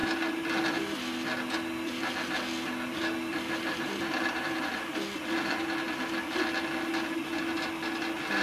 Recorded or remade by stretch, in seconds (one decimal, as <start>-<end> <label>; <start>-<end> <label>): 0.0-3.3 recorded; 3.3-4.6 remade; 4.6-8.4 recorded

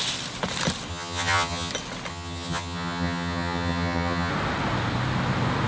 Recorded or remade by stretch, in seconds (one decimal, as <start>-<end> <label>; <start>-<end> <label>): 0.0-0.9 recorded; 0.9-1.7 remade; 1.7-2.1 recorded; 2.1-4.3 remade; 4.3-5.7 recorded

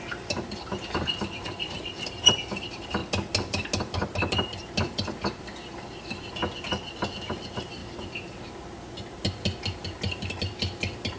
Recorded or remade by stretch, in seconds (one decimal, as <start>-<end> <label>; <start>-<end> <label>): 0.0-3.0 remade; 3.0-4.3 recorded; 4.3-6.4 remade; 6.4-7.1 recorded; 7.1-7.8 remade; 7.8-8.7 recorded; 8.7-11.2 remade

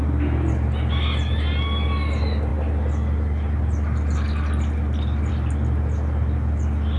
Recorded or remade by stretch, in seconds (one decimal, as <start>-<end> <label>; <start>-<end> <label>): 0.0-7.0 recorded

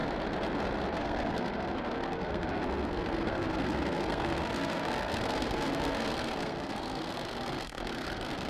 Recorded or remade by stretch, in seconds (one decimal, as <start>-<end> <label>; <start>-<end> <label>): 0.0-0.9 recorded; 0.9-8.5 remade

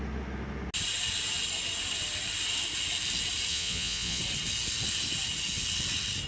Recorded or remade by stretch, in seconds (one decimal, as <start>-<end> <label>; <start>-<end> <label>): 0.0-3.5 recorded; 3.5-4.2 remade; 4.2-6.3 recorded

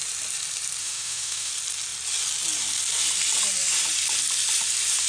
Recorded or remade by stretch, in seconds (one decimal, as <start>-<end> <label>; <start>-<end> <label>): 0.0-0.8 recorded; 0.8-1.5 remade; 1.5-5.1 recorded